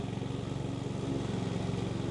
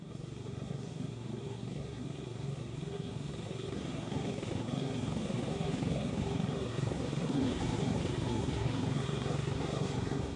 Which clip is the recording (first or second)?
first